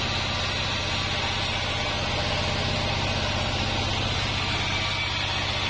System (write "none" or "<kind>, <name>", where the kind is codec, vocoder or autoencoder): none